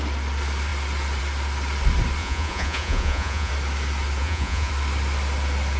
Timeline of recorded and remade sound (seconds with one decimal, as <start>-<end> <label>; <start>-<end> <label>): 0.0-2.2 recorded; 2.2-3.5 remade; 3.5-4.2 recorded; 4.2-4.7 remade; 4.7-5.8 recorded